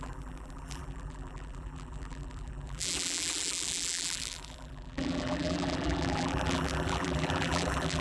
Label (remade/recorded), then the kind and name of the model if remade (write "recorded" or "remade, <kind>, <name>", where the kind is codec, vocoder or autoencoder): remade, vocoder, BigVGAN v2